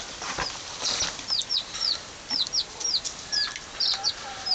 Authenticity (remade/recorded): remade